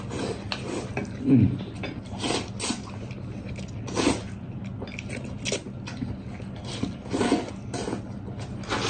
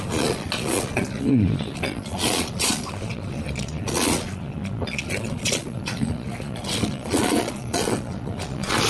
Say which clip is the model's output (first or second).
second